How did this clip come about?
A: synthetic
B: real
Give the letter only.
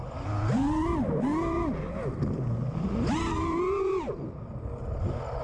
B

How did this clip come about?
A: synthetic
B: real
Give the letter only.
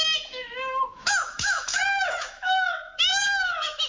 A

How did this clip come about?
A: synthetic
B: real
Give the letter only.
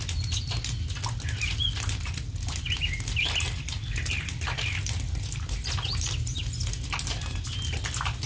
B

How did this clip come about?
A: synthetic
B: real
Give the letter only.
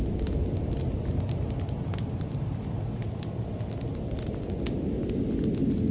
B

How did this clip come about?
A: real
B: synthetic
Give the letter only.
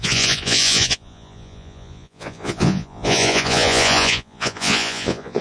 B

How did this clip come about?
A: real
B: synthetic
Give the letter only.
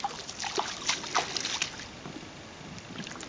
A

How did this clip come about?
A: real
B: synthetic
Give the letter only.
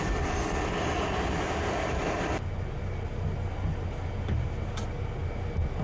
A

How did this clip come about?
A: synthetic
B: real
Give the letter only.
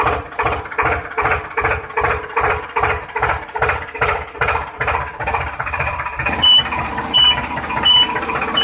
A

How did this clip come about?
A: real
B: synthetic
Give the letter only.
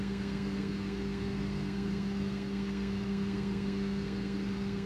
B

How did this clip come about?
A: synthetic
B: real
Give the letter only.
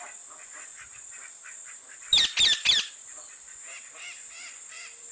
B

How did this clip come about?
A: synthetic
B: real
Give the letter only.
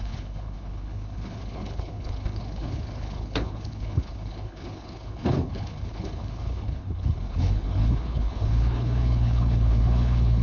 A